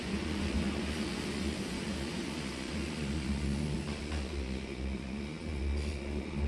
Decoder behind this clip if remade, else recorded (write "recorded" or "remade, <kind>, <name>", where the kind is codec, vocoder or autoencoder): remade, vocoder, Vocos